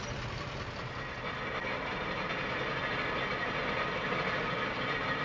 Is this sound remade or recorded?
recorded